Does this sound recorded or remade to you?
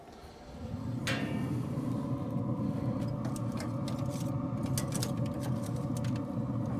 recorded